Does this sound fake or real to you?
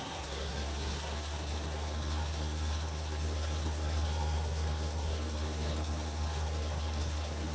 fake